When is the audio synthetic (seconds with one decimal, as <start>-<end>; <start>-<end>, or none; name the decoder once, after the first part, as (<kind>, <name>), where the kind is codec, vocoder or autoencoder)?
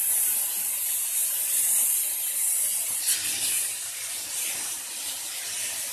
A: none